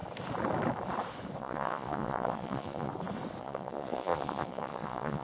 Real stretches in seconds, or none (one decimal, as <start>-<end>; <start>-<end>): 0.0-1.4; 2.9-3.4